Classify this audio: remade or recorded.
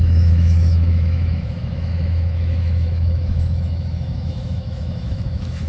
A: remade